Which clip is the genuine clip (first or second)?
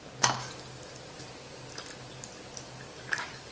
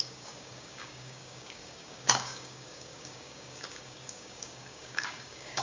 first